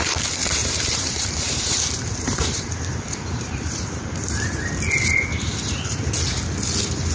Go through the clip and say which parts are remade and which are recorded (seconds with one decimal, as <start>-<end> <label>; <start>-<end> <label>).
0.0-0.6 recorded; 0.6-4.8 remade; 4.8-5.3 recorded; 5.3-6.1 remade; 6.1-7.1 recorded